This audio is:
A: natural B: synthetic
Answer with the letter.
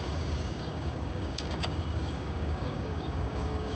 B